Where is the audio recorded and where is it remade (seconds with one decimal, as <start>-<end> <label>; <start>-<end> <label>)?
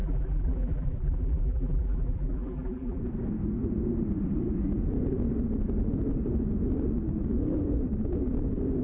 0.0-3.0 remade; 3.0-8.8 recorded